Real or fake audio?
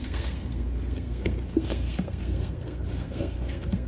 fake